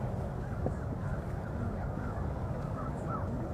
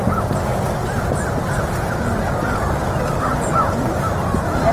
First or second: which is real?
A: second